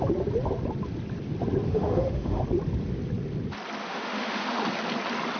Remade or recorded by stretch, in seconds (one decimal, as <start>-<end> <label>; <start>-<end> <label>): 0.0-1.7 recorded; 1.7-2.4 remade; 2.4-3.8 recorded; 3.8-4.6 remade; 4.6-5.4 recorded